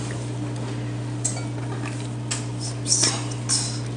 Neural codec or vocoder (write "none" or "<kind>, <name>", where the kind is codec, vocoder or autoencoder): none